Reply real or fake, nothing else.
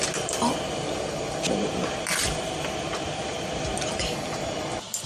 real